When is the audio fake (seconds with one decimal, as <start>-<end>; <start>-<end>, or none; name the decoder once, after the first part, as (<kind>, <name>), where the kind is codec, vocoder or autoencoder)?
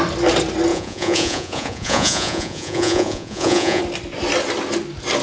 0.7-3.8 (vocoder, Vocos)